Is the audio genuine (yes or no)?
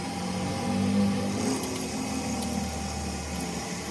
yes